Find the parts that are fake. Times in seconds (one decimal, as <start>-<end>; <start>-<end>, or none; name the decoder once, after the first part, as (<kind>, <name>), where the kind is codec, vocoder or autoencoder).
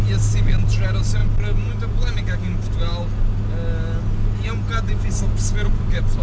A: 5.7-6.2 (vocoder, BigVGAN v2)